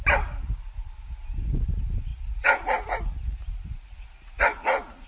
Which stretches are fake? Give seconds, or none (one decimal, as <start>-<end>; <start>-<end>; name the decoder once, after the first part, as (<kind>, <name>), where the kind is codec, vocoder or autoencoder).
none